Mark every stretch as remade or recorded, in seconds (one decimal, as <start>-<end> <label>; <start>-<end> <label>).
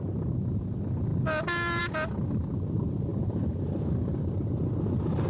0.0-5.3 recorded